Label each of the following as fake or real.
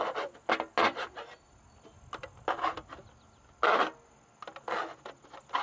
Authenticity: real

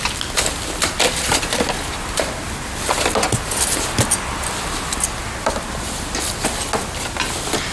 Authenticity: real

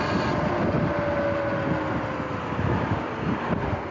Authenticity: real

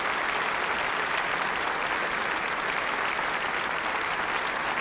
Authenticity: real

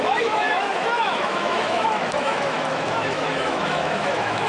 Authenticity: fake